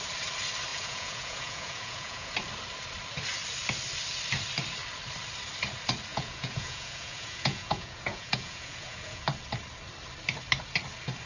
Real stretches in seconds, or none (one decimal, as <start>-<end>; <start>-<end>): 0.0-0.7; 2.3-6.1; 9.2-11.3